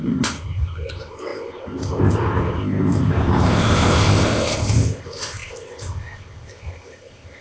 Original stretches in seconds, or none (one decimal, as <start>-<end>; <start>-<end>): none